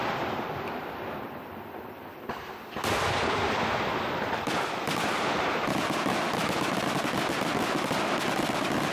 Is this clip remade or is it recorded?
remade